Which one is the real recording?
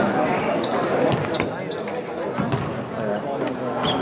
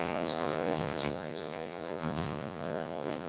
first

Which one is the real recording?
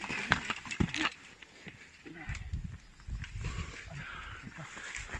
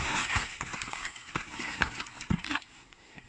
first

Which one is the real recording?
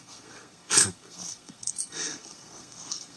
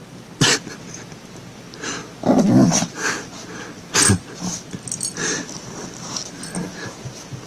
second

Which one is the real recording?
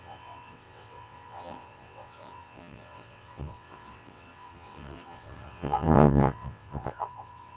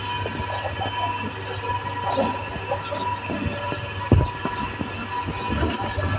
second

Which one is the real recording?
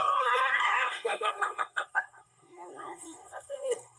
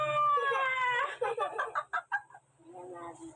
second